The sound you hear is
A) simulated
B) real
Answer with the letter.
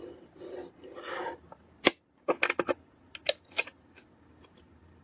B